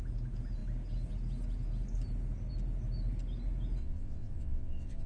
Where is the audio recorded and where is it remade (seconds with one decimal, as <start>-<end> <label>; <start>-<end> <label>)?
0.0-3.8 recorded; 3.8-5.1 remade